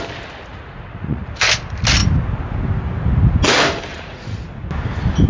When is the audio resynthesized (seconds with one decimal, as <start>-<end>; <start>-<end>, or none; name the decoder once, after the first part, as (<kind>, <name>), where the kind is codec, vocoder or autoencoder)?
0.5-1.2 (vocoder, Vocos); 3.9-4.4